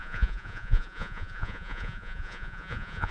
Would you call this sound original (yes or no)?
no